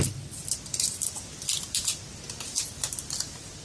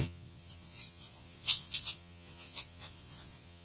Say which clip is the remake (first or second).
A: second